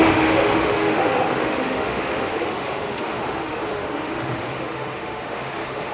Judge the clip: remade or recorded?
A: remade